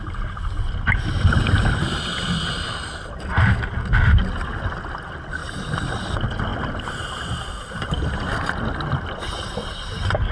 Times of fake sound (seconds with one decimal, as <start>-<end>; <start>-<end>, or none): none